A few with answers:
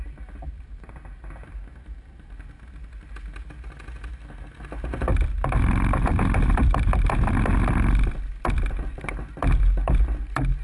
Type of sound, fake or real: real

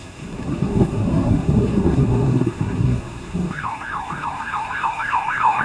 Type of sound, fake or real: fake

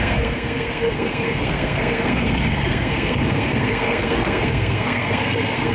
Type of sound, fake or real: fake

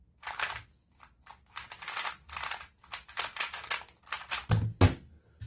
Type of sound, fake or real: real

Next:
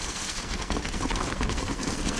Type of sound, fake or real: fake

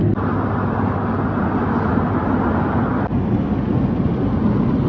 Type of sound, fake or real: real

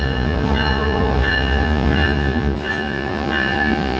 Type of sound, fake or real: fake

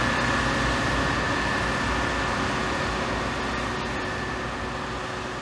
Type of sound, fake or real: real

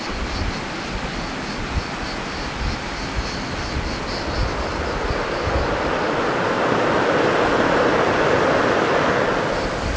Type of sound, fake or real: real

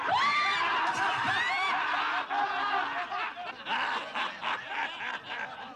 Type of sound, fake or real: real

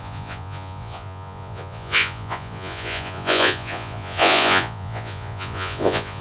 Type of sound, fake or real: fake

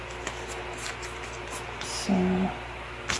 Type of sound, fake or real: real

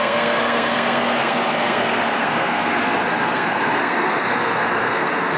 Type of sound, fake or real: fake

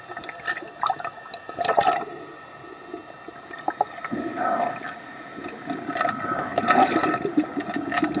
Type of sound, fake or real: real